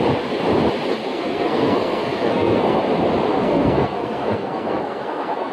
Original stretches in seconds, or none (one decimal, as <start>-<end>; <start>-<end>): 0.0-1.0; 2.8-3.3